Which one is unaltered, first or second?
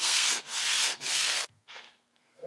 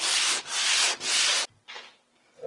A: second